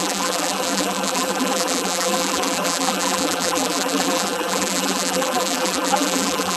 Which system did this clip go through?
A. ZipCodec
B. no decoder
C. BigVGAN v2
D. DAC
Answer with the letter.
C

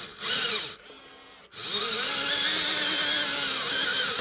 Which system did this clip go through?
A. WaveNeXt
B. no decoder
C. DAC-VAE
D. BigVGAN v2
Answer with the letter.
B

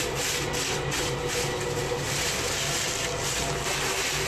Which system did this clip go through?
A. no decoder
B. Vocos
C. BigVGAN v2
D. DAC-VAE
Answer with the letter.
A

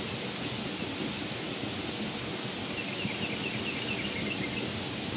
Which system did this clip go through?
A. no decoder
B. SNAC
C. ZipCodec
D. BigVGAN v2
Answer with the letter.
A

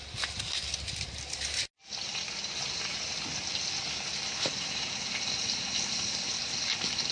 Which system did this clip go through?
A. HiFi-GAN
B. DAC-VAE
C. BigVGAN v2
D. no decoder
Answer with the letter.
D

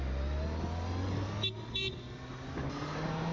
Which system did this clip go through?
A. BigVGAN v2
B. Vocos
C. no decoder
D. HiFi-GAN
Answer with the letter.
C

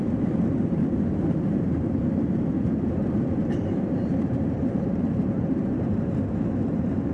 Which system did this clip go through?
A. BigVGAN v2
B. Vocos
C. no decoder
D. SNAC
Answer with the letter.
A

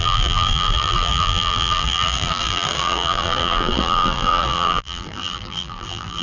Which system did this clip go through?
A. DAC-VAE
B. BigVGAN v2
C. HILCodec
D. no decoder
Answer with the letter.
B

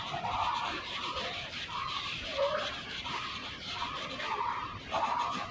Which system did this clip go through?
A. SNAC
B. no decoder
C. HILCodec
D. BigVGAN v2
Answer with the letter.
D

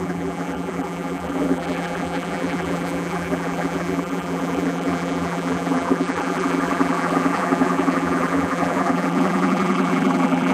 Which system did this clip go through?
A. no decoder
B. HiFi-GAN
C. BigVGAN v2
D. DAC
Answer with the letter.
C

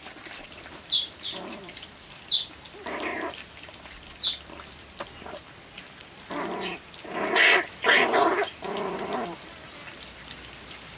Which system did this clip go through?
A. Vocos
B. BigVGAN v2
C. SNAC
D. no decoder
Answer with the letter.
B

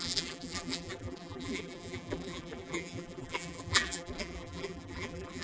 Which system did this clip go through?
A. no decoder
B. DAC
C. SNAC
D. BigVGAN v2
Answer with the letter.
D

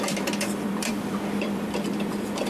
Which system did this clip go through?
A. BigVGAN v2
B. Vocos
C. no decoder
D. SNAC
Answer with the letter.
A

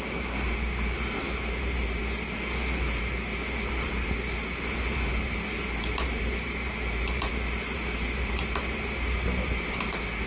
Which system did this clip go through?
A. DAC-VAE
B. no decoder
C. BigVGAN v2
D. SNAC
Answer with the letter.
C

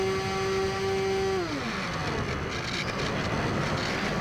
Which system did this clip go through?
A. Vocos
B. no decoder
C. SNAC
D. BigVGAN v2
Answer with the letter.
B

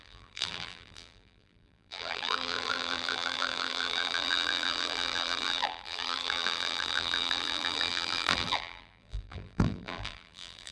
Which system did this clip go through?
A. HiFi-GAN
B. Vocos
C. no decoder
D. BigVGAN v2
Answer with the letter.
D